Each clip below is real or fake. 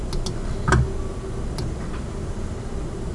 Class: real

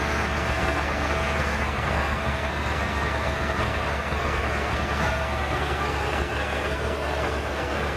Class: fake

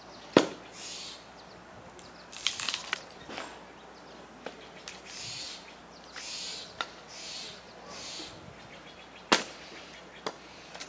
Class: real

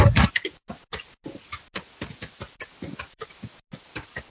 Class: real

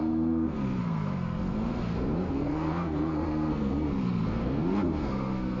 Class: fake